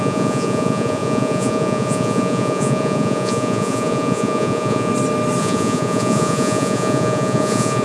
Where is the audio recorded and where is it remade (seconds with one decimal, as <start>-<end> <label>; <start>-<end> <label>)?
0.0-4.9 remade; 4.9-5.4 recorded; 5.4-7.8 remade